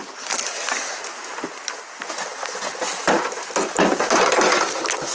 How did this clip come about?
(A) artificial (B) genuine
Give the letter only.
B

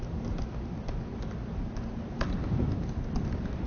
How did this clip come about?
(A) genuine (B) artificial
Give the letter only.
A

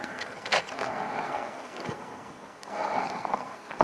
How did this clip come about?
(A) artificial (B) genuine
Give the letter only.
A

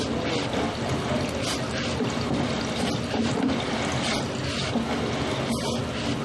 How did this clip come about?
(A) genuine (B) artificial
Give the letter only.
A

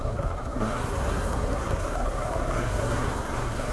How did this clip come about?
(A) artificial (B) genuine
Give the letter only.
A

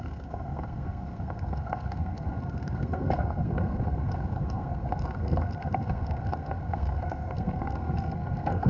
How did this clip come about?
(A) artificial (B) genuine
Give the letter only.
A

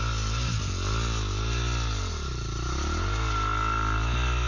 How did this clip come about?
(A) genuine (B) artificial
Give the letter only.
A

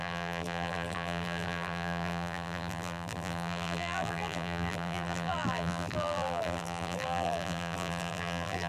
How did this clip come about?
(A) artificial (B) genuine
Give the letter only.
A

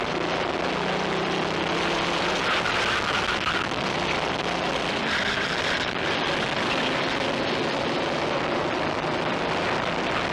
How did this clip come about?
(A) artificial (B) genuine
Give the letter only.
B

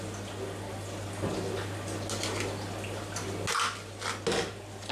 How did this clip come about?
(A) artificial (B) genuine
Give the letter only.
B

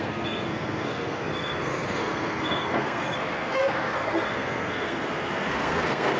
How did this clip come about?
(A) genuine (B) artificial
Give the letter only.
B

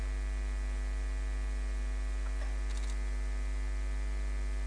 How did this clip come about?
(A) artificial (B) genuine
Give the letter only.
B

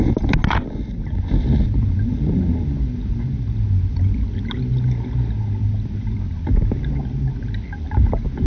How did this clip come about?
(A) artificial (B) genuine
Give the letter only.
B